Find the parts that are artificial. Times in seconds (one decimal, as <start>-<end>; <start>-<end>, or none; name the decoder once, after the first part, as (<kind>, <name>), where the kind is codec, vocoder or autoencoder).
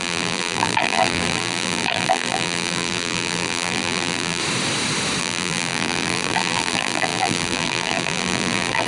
0.0-4.4 (vocoder, BigVGAN v2); 5.2-8.9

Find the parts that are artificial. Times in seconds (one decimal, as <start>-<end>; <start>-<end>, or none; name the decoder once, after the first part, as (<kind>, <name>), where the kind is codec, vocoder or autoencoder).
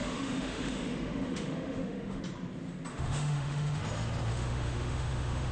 0.0-2.2 (autoencoder, DAC-VAE); 2.9-3.8; 4.3-5.5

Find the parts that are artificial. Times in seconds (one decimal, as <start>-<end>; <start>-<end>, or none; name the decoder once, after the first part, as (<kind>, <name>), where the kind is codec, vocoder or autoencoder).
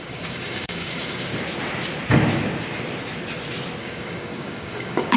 0.0-1.3 (codec, DAC); 3.8-5.2